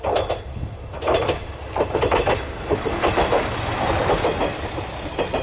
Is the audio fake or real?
real